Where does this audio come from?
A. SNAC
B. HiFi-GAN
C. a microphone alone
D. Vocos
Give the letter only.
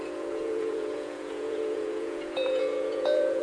D